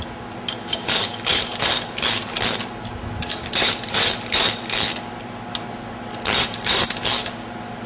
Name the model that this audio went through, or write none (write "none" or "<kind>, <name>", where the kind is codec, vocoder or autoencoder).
none